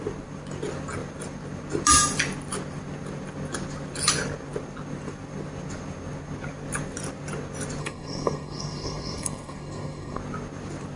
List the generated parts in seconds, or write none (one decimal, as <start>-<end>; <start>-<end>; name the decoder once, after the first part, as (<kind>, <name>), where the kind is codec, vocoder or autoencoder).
7.8-10.2 (codec, SNAC)